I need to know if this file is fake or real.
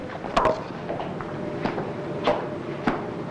real